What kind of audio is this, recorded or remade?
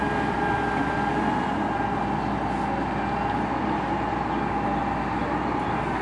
recorded